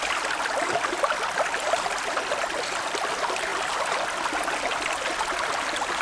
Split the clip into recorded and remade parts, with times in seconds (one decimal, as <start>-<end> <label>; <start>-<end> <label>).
0.0-6.0 recorded